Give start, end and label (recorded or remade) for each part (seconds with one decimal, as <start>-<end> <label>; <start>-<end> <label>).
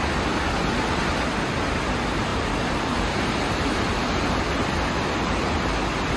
0.0-2.3 recorded; 2.3-4.3 remade; 4.3-6.2 recorded